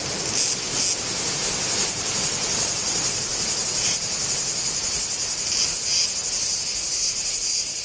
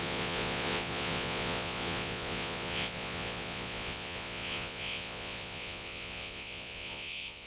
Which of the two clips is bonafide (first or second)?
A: first